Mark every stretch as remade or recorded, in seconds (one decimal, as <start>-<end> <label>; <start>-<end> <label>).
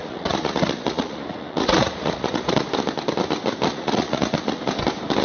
0.0-2.7 remade; 2.7-3.7 recorded; 3.7-4.7 remade; 4.7-5.2 recorded